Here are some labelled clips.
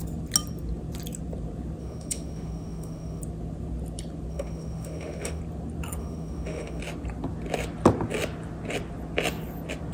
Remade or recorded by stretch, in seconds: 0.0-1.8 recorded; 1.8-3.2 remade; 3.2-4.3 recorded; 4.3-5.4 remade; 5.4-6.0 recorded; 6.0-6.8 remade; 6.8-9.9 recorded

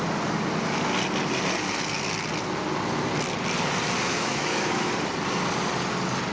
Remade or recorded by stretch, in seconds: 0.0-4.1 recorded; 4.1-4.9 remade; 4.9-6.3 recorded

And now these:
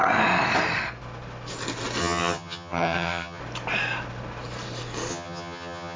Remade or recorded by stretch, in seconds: 0.0-2.0 recorded; 2.0-3.4 remade; 3.4-5.1 recorded; 5.1-6.0 remade

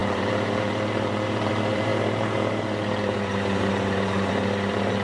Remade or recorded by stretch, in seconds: 0.0-5.0 remade